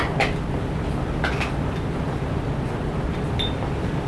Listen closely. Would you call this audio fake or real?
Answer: real